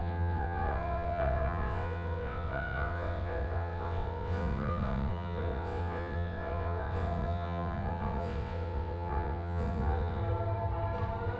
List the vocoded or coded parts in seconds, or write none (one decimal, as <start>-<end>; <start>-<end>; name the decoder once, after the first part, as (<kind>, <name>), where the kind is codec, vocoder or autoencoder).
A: 0.0-10.2 (vocoder, WaveNeXt)